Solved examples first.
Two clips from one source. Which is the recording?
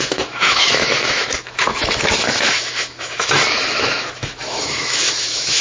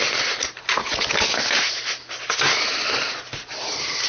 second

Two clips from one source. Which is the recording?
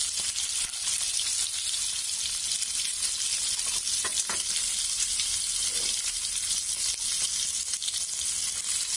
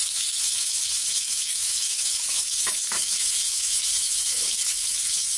first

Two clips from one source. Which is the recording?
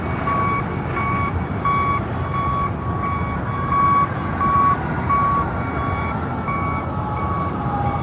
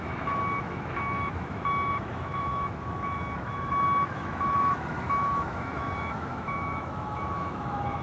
first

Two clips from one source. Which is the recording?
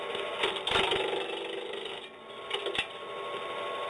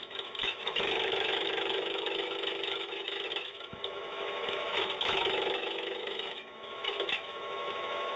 first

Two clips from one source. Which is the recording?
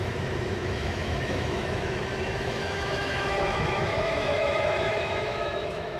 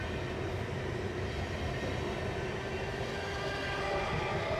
second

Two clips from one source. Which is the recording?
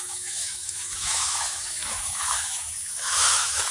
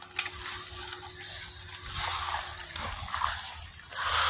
second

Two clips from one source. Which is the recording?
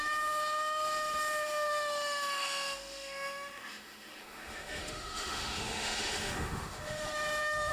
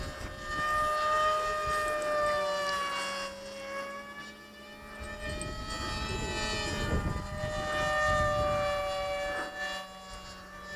second